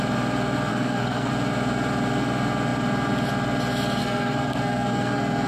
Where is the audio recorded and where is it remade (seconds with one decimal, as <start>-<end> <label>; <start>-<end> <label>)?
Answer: 0.0-0.7 recorded; 0.7-1.3 remade; 1.3-4.0 recorded; 4.0-5.5 remade

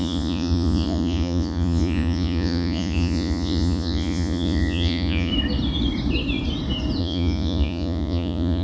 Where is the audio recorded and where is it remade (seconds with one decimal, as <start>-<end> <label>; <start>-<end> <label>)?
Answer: 0.0-5.3 remade; 5.3-7.0 recorded; 7.0-8.6 remade

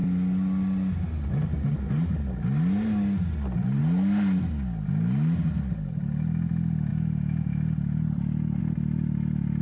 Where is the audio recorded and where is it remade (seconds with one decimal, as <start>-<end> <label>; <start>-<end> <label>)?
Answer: 0.0-9.6 recorded

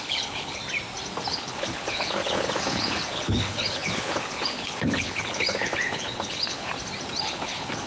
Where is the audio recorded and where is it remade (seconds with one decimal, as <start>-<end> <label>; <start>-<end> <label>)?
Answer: 0.0-0.6 remade; 0.6-1.3 recorded; 1.3-6.7 remade; 6.7-7.2 recorded; 7.2-7.9 remade